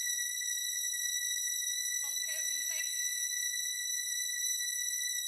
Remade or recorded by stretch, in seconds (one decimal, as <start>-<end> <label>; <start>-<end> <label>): 0.0-2.8 remade; 2.8-3.7 recorded; 3.7-5.3 remade